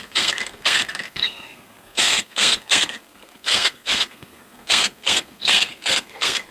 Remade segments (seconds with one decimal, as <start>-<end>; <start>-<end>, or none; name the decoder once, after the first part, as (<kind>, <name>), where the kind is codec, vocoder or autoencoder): 0.0-6.5 (codec, SNAC)